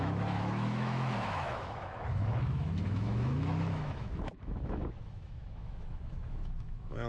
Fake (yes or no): yes